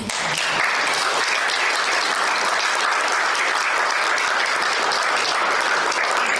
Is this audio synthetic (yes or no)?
no